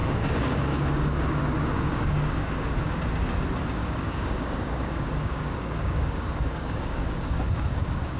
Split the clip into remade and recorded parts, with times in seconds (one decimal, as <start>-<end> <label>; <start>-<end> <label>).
0.0-3.0 remade; 3.0-3.8 recorded; 3.8-8.2 remade